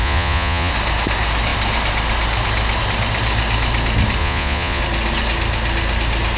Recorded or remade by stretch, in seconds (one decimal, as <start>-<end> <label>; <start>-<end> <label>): 0.0-0.7 remade; 0.7-4.2 recorded; 4.2-4.8 remade; 4.8-6.4 recorded